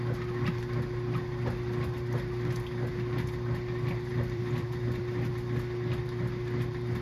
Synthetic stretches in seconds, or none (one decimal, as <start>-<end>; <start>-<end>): 4.1-5.0